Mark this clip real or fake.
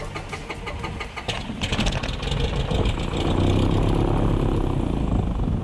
real